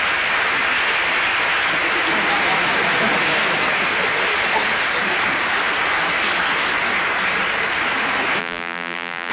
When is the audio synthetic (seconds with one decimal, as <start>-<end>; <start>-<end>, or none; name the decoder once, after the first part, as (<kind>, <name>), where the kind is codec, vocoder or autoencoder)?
8.4-9.3 (vocoder, BigVGAN v2)